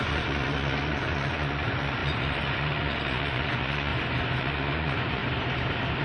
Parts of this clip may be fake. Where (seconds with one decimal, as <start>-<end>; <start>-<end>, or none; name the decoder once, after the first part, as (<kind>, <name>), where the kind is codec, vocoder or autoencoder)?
0.0-3.9 (vocoder, Vocos); 4.4-5.2